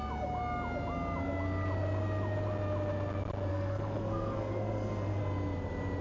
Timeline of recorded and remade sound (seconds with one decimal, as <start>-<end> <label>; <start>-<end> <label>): 0.0-3.5 recorded; 3.5-5.2 remade; 5.2-6.0 recorded